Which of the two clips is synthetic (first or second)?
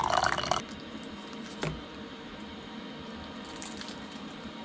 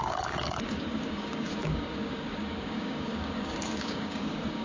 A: second